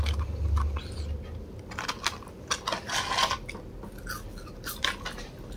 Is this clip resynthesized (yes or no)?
no